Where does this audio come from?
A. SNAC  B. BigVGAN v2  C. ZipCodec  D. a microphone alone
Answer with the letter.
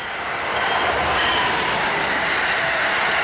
D